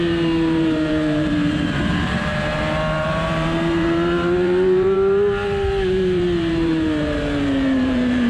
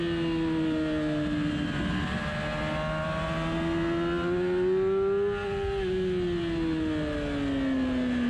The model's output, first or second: first